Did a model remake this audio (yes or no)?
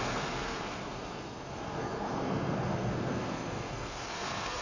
yes